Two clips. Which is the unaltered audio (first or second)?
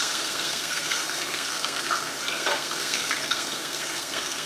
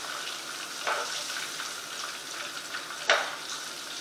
second